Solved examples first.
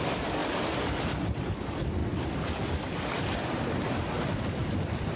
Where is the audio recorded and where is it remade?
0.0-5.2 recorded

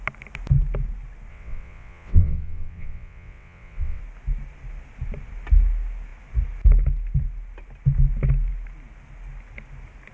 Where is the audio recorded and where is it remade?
0.0-1.3 recorded; 1.3-4.0 remade; 4.0-10.1 recorded